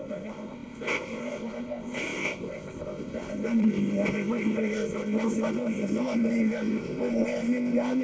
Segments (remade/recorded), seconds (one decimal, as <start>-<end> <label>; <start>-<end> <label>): 0.0-8.0 remade